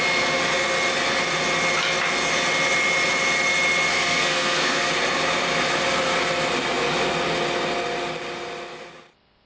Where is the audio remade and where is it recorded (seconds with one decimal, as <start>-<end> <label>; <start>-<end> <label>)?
0.0-3.9 recorded; 3.9-4.9 remade; 4.9-9.5 recorded